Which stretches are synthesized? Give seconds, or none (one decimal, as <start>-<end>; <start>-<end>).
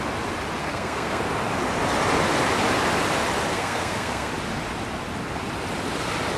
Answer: 0.6-1.2; 3.5-4.3